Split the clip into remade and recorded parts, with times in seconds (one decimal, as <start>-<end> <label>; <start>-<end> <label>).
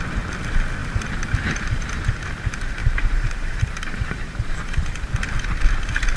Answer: 0.0-0.8 recorded; 0.8-1.9 remade; 1.9-2.8 recorded; 2.8-5.1 remade; 5.1-6.2 recorded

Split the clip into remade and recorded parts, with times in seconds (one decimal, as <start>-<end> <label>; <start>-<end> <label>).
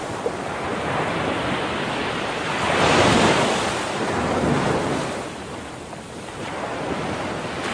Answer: 0.0-2.0 recorded; 2.0-5.7 remade; 5.7-7.7 recorded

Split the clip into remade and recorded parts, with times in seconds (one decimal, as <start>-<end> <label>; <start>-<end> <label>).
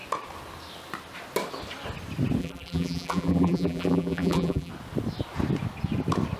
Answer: 0.0-2.4 recorded; 2.4-4.7 remade; 4.7-6.4 recorded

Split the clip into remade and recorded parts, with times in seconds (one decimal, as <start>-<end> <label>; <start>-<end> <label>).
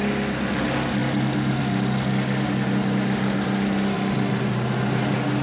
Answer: 0.0-5.4 recorded